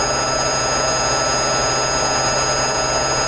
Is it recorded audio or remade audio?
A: recorded